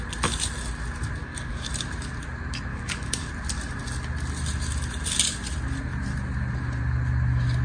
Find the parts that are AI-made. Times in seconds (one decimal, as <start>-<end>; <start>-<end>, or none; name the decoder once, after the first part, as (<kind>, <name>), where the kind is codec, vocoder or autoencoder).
1.2-1.7 (codec, DAC); 2.7-3.3